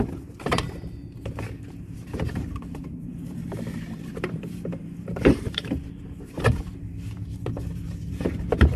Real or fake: fake